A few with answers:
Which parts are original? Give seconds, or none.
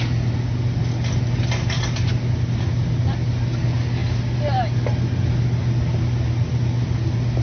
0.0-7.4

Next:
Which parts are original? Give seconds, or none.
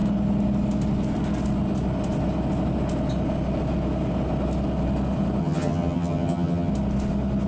0.0-5.4; 6.7-7.5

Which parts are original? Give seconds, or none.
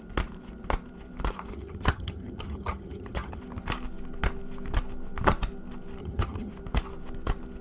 0.0-1.5; 3.4-6.0; 6.5-7.6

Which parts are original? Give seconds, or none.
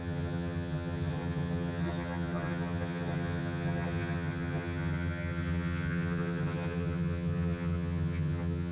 none